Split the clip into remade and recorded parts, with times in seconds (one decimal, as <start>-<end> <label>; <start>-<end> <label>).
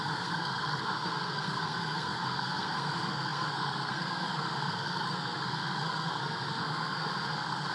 0.0-7.7 remade